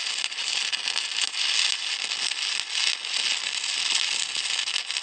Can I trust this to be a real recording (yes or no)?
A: yes